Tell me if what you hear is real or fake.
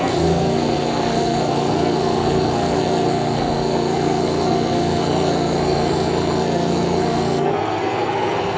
fake